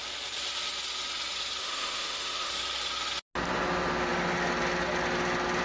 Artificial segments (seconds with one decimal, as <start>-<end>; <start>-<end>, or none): 1.6-2.5